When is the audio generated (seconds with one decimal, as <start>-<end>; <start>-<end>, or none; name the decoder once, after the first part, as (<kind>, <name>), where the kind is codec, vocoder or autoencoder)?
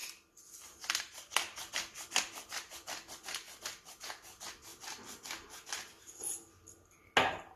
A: none